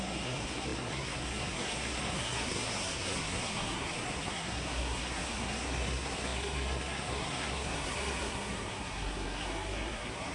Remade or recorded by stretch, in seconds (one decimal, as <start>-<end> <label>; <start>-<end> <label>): 0.0-10.3 remade